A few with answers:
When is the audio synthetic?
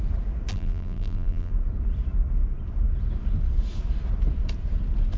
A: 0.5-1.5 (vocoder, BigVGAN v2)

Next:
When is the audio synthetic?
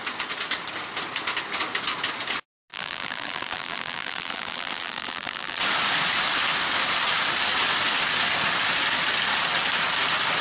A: 2.7-5.6 (vocoder, BigVGAN v2)